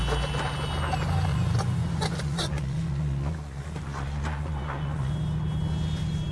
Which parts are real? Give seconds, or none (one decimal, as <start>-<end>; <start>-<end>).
0.0-1.3; 5.1-6.3

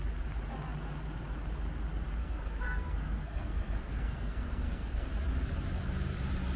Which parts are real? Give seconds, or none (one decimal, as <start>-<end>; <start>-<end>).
0.0-2.2; 5.1-6.6

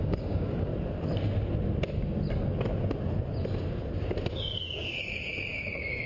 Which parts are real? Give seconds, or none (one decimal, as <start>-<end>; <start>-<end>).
0.7-4.3

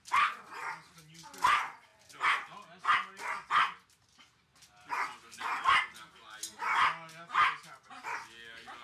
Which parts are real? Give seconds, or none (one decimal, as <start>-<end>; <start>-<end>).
0.0-8.8

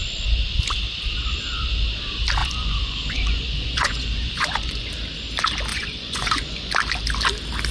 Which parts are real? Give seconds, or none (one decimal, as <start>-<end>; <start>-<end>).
0.0-2.4; 4.9-5.7; 6.7-7.7